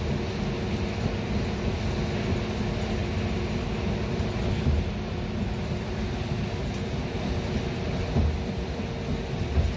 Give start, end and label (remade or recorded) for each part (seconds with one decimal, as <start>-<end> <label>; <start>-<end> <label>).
0.0-9.8 recorded